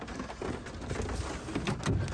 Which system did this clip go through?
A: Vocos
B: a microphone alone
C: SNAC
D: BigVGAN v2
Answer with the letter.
B